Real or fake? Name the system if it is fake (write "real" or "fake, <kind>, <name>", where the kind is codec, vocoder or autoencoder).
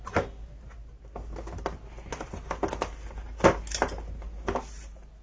real